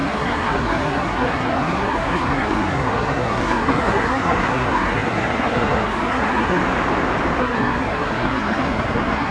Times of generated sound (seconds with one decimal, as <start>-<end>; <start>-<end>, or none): 0.0-6.6; 7.4-9.3